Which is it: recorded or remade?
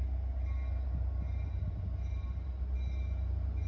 recorded